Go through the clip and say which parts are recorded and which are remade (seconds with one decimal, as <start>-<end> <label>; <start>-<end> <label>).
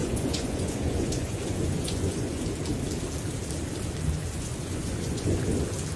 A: 0.0-2.4 remade; 2.4-4.2 recorded; 4.2-5.6 remade; 5.6-6.0 recorded